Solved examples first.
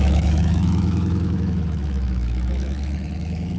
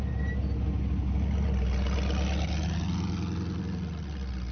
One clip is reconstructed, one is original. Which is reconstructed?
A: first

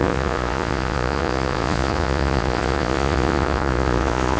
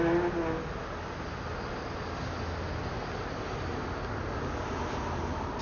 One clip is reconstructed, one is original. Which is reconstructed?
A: first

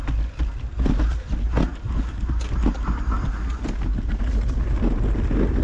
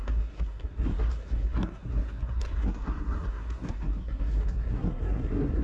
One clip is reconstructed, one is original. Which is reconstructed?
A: second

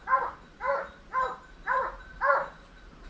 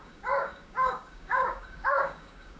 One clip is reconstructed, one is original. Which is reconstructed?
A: second